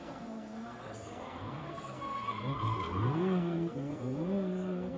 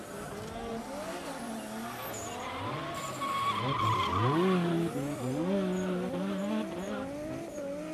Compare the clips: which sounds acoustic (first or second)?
second